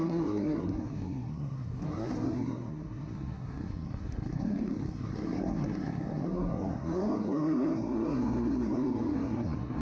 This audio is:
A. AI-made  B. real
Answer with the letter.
A